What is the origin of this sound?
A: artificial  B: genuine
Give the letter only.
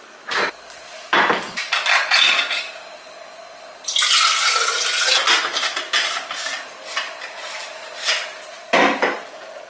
B